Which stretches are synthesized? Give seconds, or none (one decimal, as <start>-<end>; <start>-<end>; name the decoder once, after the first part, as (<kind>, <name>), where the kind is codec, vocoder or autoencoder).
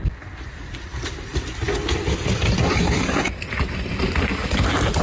none